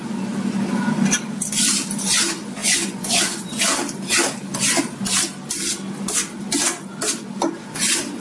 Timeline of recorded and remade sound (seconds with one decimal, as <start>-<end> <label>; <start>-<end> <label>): 0.0-2.6 recorded; 2.6-3.6 remade; 3.6-8.2 recorded